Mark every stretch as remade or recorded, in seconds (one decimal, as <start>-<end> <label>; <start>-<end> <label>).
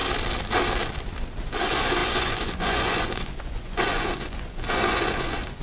0.0-1.6 recorded; 1.6-5.6 remade